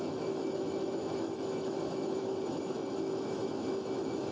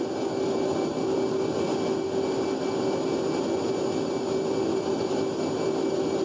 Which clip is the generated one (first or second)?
first